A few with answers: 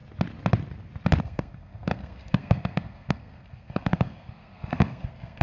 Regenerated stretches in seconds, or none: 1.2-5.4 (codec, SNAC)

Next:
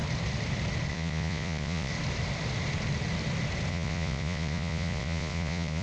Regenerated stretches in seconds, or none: 0.9-1.9 (vocoder, Vocos); 3.7-5.8

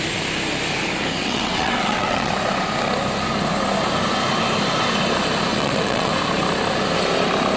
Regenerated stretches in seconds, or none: 1.2-2.3 (vocoder, WaveNeXt); 5.5-6.1

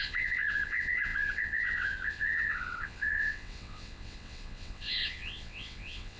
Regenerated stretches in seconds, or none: 0.0-6.2 (vocoder, WaveNeXt)